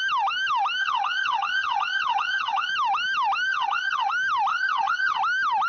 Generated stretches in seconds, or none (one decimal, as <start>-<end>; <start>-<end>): 0.8-2.7; 3.5-4.1; 4.5-5.2